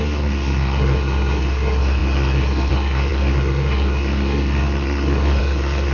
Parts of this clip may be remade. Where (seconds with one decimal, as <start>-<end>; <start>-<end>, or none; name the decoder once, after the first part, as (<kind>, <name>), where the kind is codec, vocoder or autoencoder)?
0.0-5.9 (codec, SNAC)